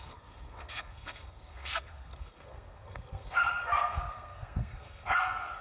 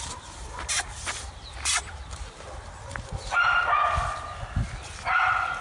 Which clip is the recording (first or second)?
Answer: second